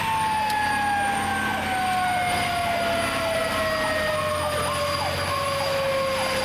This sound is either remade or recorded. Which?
recorded